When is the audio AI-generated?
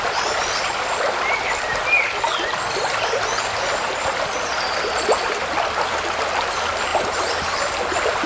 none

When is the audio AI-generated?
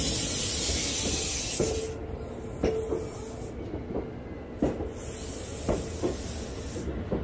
none